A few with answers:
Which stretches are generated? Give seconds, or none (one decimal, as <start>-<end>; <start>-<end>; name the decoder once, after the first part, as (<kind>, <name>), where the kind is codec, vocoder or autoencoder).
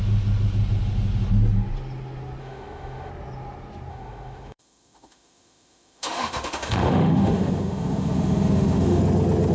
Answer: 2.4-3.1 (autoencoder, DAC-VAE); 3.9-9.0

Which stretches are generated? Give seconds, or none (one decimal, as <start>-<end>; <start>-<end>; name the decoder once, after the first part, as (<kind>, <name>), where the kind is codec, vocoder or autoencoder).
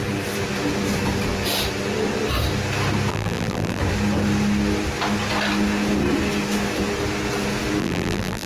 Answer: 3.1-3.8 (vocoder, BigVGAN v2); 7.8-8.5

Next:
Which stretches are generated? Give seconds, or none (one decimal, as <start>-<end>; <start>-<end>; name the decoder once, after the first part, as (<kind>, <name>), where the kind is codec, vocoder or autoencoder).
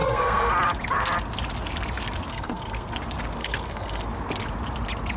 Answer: 0.0-0.5 (codec, SNAC); 2.3-2.9; 3.4-4.0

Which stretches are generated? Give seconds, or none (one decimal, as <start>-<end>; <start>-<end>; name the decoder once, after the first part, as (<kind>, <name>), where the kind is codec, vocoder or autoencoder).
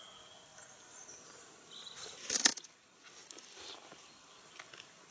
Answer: 0.5-1.9 (vocoder, BigVGAN v2); 2.5-3.6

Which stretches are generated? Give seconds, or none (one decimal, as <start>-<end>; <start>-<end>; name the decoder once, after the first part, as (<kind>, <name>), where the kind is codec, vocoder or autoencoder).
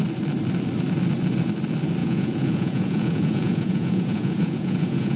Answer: 2.0-5.2 (vocoder, Vocos)